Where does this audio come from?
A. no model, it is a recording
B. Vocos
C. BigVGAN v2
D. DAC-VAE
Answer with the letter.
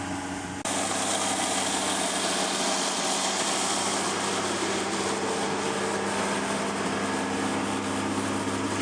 A